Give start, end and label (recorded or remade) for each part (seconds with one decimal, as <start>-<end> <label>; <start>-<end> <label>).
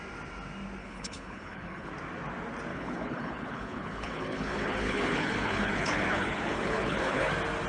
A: 0.0-0.8 recorded; 0.8-1.9 remade; 1.9-2.7 recorded; 2.7-7.3 remade; 7.3-7.7 recorded